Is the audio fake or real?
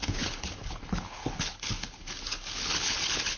fake